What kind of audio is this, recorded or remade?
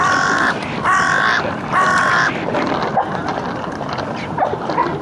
recorded